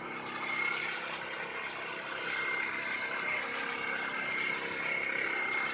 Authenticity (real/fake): real